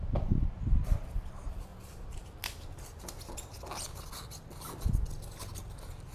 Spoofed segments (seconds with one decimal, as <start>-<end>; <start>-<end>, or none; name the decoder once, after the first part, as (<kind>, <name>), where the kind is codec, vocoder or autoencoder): 0.0-1.7 (vocoder, BigVGAN v2); 5.4-6.1